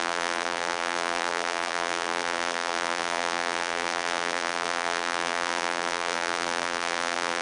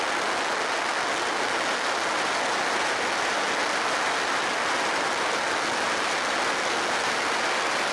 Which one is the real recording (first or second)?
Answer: second